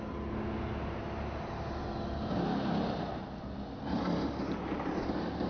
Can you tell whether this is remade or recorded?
recorded